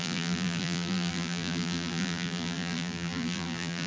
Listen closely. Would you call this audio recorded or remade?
remade